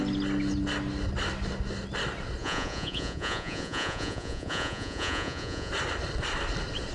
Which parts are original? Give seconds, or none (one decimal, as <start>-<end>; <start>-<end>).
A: 0.0-2.4; 5.7-6.9